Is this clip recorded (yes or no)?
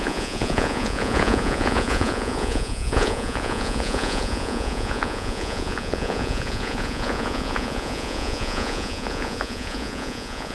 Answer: no